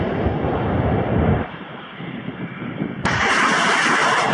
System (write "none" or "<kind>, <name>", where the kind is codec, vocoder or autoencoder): vocoder, BigVGAN v2